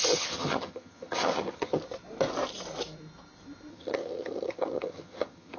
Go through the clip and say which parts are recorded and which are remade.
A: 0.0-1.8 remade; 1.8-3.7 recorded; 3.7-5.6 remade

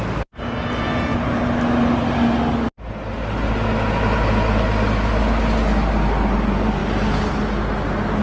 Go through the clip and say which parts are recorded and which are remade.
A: 0.0-8.2 recorded

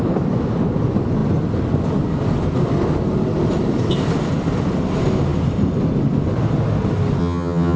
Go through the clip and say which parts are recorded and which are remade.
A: 0.0-7.2 recorded; 7.2-7.8 remade